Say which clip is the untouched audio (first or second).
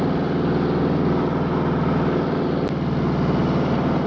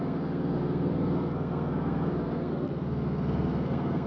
first